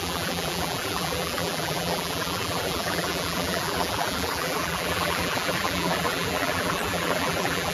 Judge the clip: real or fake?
fake